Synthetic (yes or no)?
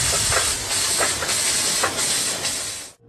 no